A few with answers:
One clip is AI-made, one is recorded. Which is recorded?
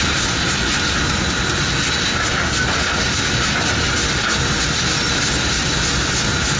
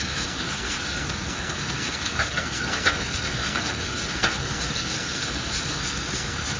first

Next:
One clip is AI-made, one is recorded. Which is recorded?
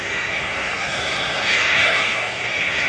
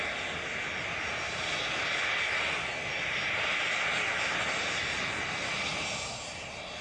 second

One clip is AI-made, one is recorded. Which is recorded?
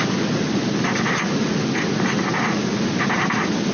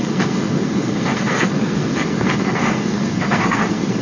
first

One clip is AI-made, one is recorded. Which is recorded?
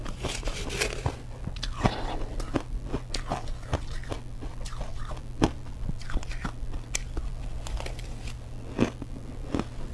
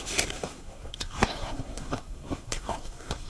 first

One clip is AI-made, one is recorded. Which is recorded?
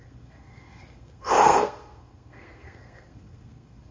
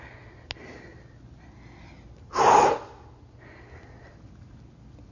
second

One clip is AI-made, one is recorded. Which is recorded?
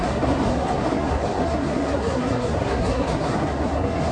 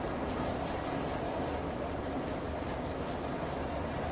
second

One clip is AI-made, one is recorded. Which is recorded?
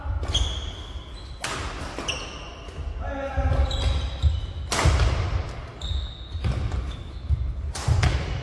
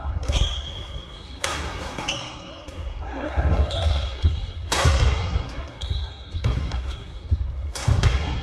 first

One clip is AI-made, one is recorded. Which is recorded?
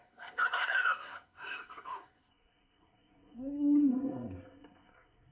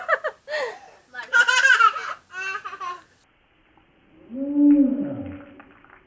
second